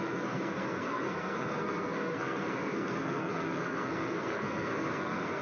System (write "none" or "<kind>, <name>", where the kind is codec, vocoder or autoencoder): codec, SNAC